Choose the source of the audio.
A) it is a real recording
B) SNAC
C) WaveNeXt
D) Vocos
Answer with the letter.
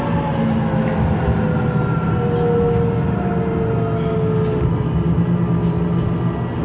A